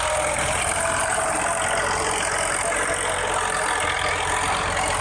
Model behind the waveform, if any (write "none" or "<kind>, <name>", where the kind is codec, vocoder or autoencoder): none